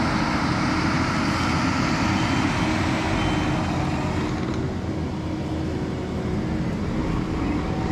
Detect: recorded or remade recorded